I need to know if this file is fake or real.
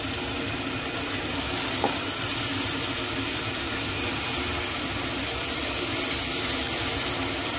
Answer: real